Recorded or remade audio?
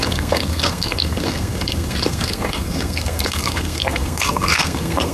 remade